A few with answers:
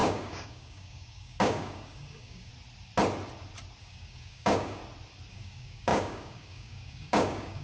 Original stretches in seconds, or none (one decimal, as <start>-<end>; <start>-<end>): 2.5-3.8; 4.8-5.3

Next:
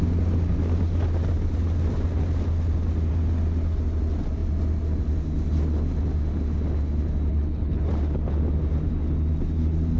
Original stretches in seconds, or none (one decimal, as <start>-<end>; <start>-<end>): 0.0-7.3; 7.9-10.0

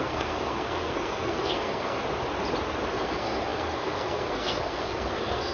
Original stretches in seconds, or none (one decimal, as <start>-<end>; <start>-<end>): 2.0-2.9

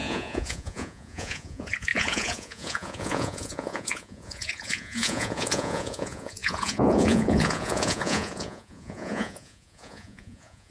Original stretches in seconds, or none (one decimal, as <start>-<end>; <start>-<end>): none